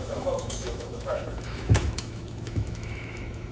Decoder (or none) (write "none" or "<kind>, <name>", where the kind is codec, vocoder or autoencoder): autoencoder, DAC-VAE